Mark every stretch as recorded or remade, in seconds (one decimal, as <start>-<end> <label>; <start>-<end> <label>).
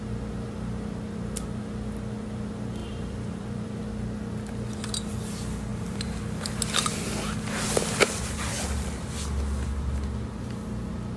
0.0-2.8 recorded; 2.8-3.8 remade; 3.8-5.7 recorded; 5.7-9.4 remade; 9.4-11.2 recorded